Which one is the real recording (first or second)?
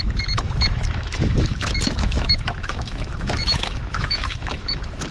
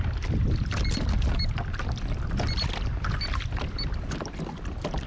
second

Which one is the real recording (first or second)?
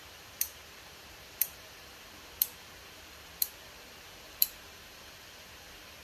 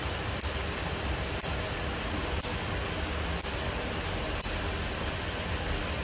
second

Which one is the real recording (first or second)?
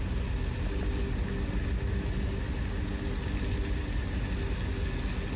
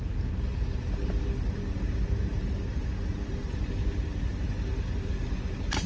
first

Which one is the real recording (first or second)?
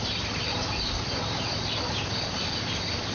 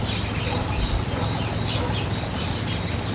second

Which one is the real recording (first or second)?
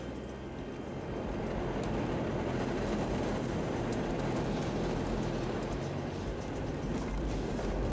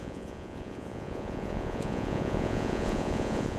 first